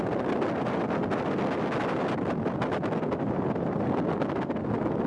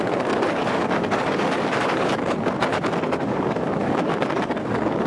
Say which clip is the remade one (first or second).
second